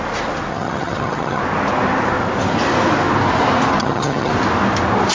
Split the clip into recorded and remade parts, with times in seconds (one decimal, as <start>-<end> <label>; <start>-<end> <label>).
0.0-0.5 recorded; 0.5-1.4 remade; 1.4-3.8 recorded; 3.8-4.3 remade; 4.3-5.1 recorded